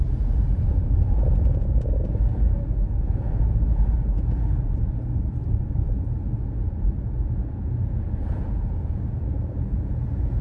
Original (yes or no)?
no